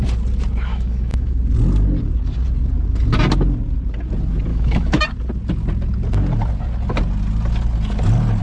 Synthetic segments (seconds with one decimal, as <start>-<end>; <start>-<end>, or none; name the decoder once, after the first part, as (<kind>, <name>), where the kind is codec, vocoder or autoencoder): 0.7-1.4 (autoencoder, DAC-VAE); 4.5-5.0